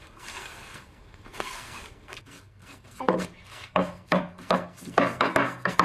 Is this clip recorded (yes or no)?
no